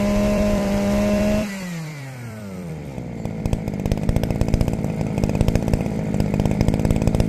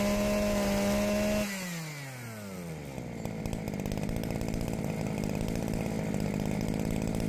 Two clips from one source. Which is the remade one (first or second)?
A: first